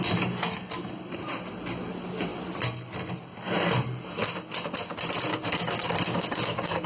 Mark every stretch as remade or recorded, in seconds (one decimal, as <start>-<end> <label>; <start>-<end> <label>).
0.0-5.3 recorded; 5.3-6.9 remade